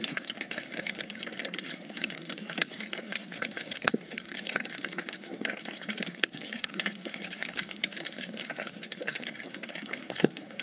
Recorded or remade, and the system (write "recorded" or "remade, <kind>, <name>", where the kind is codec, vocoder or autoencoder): remade, codec, SNAC